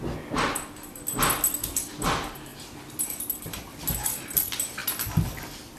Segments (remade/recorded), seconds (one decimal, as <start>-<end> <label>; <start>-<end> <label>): 0.0-5.8 recorded